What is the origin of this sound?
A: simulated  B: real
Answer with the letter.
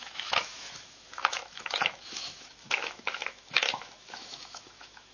A